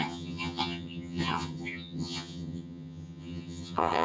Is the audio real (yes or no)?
no